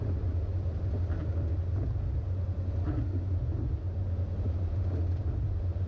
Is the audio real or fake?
real